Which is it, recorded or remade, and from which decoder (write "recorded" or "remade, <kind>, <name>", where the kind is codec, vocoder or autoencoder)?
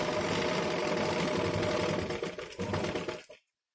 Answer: recorded